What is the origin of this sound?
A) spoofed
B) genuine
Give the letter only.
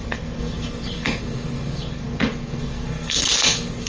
A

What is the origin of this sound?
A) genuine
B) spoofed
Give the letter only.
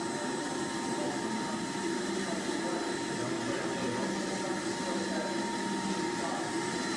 A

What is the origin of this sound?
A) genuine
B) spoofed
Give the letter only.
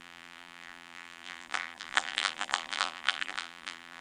B